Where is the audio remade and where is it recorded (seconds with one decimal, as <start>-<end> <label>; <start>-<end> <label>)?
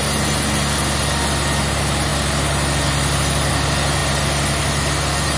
0.0-5.4 recorded